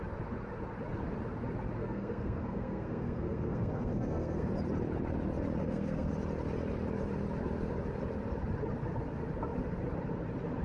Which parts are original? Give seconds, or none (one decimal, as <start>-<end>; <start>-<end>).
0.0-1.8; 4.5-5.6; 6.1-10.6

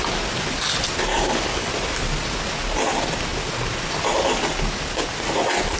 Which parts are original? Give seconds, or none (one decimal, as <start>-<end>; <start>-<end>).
0.0-1.1; 1.7-5.8

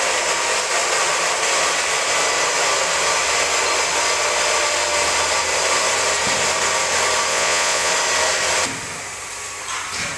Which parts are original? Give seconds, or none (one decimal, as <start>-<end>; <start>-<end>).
0.0-7.3; 7.9-10.2